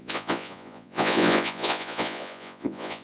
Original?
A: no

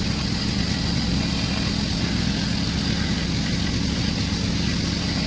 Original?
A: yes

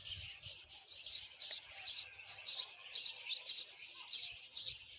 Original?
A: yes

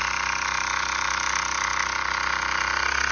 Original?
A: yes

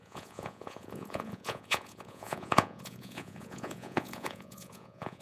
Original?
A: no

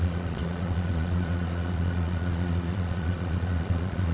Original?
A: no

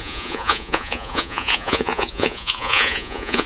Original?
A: no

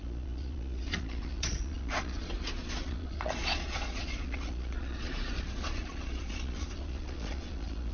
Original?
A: no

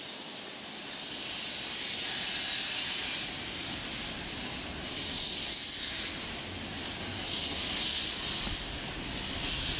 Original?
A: yes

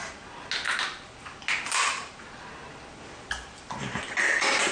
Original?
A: yes